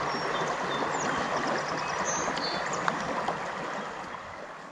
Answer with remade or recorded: recorded